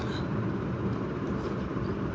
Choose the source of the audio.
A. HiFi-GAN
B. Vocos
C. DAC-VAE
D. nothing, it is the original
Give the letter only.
D